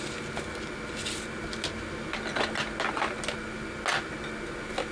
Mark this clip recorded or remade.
recorded